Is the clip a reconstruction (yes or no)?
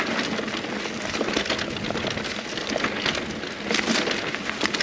no